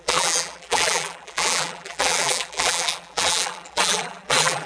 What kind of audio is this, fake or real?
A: fake